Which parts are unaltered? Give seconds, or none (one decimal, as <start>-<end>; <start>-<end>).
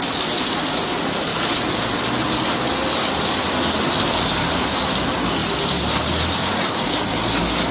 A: 0.0-7.7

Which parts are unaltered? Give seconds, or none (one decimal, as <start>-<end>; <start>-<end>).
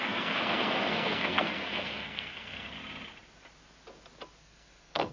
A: 2.8-4.4